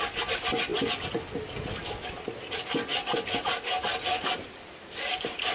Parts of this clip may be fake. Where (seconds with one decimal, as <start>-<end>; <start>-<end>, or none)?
none